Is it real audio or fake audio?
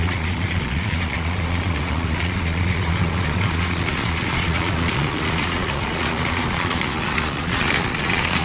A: fake